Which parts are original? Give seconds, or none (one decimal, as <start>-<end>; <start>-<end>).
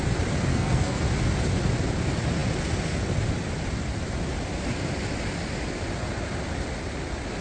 0.0-0.5; 1.0-7.4